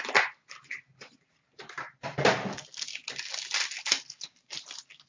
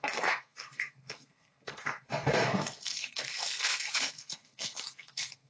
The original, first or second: first